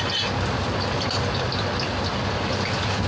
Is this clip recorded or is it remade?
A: recorded